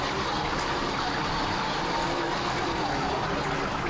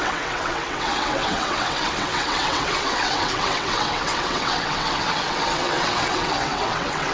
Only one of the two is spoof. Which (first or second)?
second